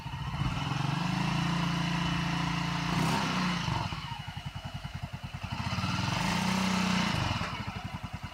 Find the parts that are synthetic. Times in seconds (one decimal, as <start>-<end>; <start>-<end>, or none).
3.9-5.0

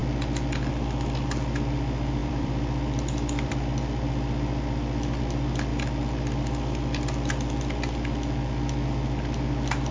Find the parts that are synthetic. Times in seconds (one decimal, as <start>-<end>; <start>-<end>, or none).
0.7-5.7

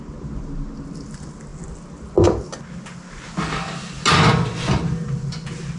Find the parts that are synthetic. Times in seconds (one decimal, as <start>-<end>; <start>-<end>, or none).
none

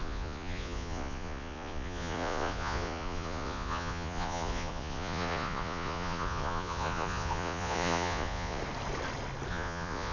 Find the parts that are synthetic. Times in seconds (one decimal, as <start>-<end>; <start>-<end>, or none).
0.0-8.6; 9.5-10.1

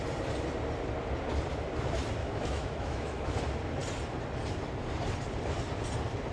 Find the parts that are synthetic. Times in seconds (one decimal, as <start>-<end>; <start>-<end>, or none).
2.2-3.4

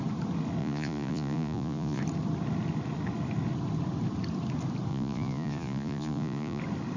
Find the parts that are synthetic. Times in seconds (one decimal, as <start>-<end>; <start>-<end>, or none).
0.6-2.0; 4.9-6.6

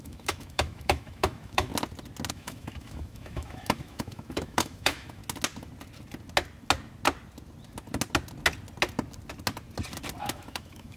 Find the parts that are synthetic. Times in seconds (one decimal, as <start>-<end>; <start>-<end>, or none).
0.0-1.7; 2.3-5.2; 10.2-11.0

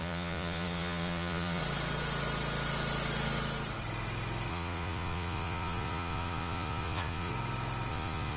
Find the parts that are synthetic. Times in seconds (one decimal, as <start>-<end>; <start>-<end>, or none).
0.0-1.6; 4.5-7.3; 7.9-8.4